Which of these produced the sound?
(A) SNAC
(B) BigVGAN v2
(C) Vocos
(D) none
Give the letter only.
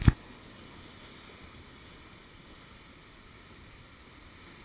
D